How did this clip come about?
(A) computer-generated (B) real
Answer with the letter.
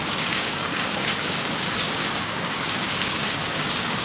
A